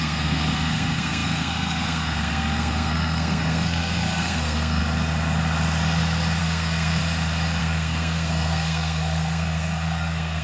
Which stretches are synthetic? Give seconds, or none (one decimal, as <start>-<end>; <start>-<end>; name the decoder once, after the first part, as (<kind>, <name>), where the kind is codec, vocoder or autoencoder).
0.0-4.8 (codec, SNAC); 6.4-7.0; 7.6-10.4